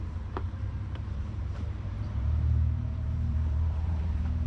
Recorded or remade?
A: remade